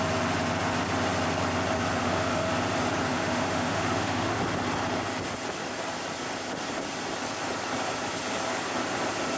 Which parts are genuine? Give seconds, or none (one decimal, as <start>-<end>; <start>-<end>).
0.0-2.0; 2.5-3.1; 4.4-9.4